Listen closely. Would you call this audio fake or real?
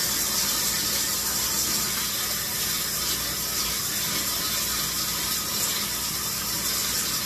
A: real